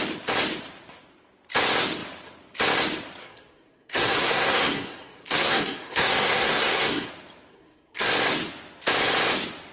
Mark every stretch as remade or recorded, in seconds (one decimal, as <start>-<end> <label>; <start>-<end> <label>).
0.0-3.2 recorded; 3.2-7.1 remade; 7.1-7.5 recorded; 7.5-8.1 remade; 8.1-9.7 recorded